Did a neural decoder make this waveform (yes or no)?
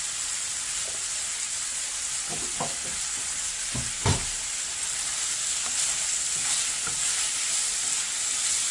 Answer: no